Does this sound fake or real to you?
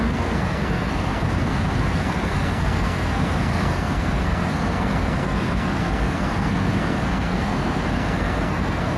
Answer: fake